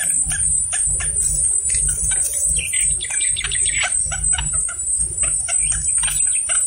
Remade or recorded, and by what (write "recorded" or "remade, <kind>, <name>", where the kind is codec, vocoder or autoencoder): remade, vocoder, BigVGAN v2